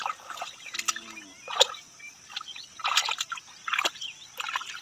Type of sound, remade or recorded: recorded